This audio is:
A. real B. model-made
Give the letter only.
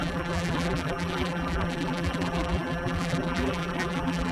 B